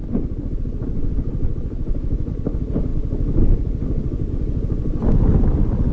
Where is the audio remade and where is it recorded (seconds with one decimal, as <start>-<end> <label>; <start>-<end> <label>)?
0.0-5.9 recorded